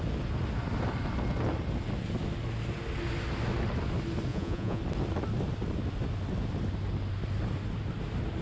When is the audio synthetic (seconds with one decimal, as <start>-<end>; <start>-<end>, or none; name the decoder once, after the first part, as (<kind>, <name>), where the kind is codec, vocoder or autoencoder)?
4.3-4.8 (vocoder, Vocos)